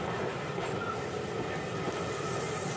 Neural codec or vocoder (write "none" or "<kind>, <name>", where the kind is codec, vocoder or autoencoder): none